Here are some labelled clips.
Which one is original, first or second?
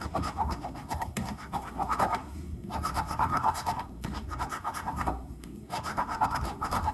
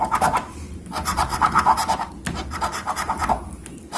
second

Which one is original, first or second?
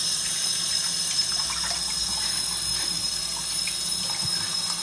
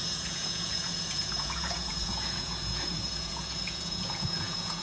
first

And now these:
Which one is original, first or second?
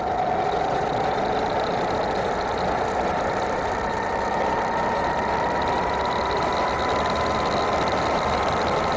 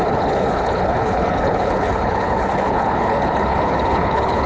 first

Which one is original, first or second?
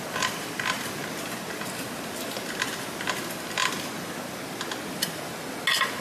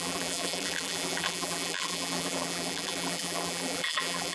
first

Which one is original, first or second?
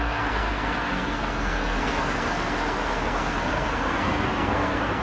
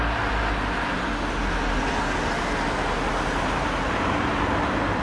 second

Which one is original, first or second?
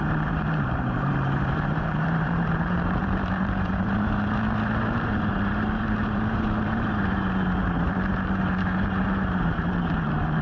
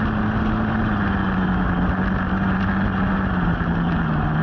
second